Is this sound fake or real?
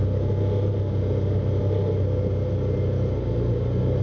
real